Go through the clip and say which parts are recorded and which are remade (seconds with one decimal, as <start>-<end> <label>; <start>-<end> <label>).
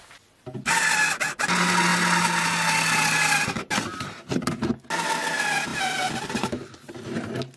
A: 0.0-5.7 recorded; 5.7-6.8 remade; 6.8-7.6 recorded